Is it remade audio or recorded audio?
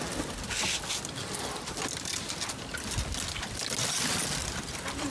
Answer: recorded